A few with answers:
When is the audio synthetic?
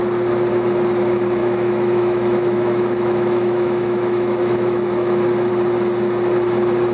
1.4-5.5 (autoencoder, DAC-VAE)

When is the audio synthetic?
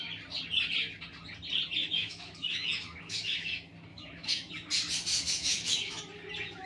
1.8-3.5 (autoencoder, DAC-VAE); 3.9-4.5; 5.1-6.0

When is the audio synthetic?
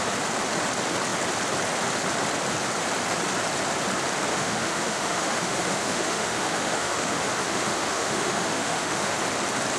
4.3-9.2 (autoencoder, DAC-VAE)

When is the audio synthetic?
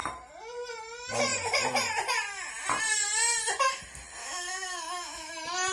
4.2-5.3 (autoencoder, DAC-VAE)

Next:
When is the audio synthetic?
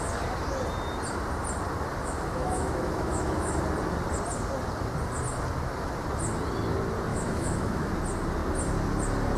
2.0-3.6 (autoencoder, DAC-VAE); 7.1-7.9